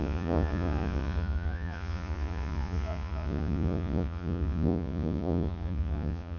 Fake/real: fake